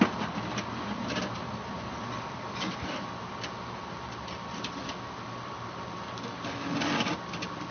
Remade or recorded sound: recorded